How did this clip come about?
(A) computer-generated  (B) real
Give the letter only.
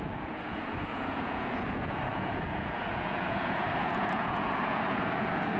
A